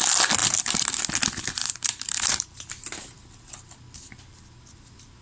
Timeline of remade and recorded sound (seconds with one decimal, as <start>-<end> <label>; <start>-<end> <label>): 0.0-0.4 recorded; 0.4-1.0 remade; 1.0-1.6 recorded; 1.6-2.7 remade; 2.7-5.2 recorded

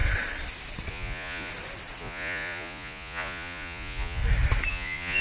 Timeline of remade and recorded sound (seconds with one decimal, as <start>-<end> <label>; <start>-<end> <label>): 0.0-0.9 recorded; 0.9-1.5 remade; 1.5-2.0 recorded; 2.0-4.2 remade; 4.2-4.7 recorded; 4.7-5.2 remade